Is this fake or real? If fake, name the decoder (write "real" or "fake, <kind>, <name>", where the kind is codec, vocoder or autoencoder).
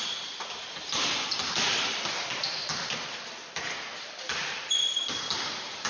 fake, vocoder, BigVGAN v2